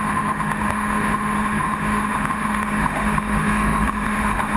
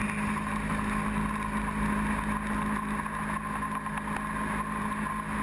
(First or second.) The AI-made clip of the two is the first